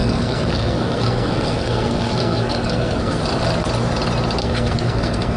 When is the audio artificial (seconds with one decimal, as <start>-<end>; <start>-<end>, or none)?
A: 0.0-3.2; 4.4-5.4